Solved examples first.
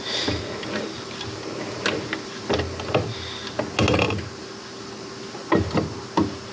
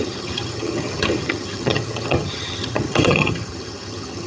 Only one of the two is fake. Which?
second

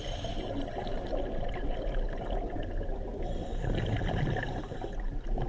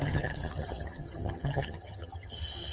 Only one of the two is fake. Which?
second